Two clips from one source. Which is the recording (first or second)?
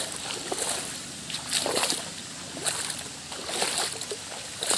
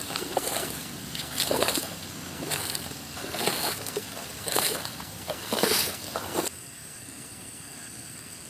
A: first